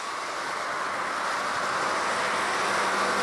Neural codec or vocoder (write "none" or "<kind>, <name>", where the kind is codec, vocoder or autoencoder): none